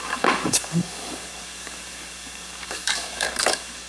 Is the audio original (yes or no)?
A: no